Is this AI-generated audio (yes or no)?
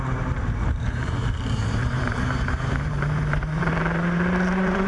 yes